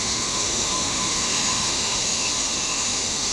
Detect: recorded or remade remade